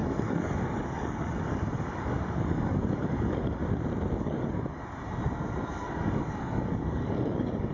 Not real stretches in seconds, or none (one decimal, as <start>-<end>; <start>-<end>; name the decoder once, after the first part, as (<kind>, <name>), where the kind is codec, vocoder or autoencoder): 0.0-3.6 (codec, DAC); 4.2-4.8; 5.7-7.7